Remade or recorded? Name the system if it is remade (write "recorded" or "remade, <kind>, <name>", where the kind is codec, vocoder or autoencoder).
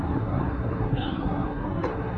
remade, codec, SNAC